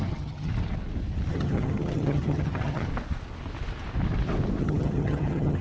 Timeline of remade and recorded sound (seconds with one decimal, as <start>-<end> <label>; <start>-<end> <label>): 0.0-0.5 remade; 0.5-1.3 recorded; 1.3-2.9 remade; 2.9-4.6 recorded; 4.6-5.6 remade